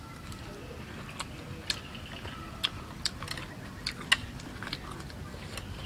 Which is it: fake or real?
real